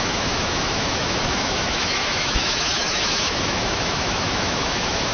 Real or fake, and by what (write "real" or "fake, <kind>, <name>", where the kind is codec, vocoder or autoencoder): fake, autoencoder, DAC-VAE